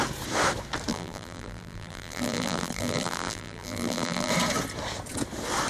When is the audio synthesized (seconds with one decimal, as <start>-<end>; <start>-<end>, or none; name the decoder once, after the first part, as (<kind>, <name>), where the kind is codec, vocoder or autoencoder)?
0.9-4.3 (vocoder, BigVGAN v2)